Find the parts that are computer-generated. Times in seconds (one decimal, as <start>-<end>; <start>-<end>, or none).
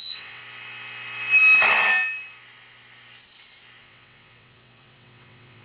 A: 0.0-0.4; 3.8-5.6